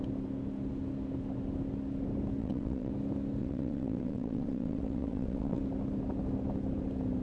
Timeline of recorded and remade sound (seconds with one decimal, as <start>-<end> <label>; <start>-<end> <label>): 0.0-2.4 recorded; 2.4-2.9 remade; 2.9-3.4 recorded; 3.4-5.6 remade; 5.6-7.2 recorded